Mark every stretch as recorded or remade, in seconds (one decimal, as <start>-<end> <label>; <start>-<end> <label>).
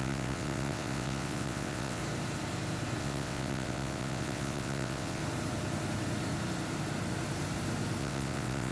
0.0-2.0 remade; 2.0-3.0 recorded; 3.0-5.2 remade; 5.2-8.0 recorded; 8.0-8.7 remade